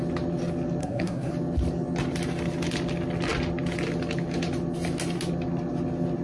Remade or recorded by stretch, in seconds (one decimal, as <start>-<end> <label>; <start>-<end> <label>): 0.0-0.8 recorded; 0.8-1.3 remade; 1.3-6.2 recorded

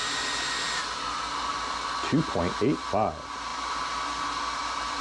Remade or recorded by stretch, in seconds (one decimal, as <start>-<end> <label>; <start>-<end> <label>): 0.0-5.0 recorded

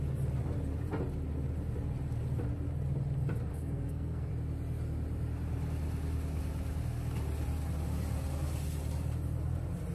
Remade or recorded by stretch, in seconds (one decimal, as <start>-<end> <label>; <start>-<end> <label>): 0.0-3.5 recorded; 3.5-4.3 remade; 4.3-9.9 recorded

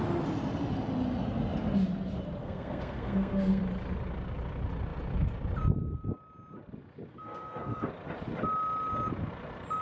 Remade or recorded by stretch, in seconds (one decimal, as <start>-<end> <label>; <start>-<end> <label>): 0.0-2.4 recorded; 2.4-3.6 remade; 3.6-7.1 recorded; 7.1-7.9 remade; 7.9-9.8 recorded

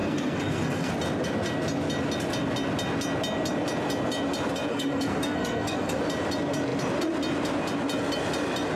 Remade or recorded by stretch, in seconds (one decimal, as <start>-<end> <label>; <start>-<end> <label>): 0.0-0.9 remade; 0.9-4.7 recorded; 4.7-6.0 remade; 6.0-8.8 recorded

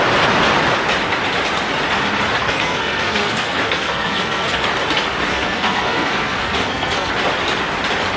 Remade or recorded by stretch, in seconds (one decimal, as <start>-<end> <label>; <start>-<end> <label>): 0.0-2.4 recorded; 2.4-4.7 remade; 4.7-5.3 recorded; 5.3-7.1 remade; 7.1-8.2 recorded